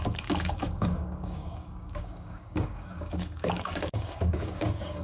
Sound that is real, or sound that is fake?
fake